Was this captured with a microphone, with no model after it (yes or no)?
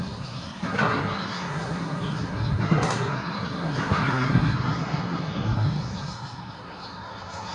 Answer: no